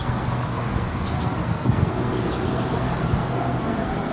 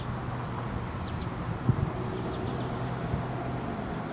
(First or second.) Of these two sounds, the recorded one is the second